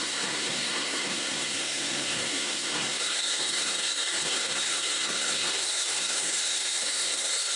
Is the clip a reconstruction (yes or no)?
yes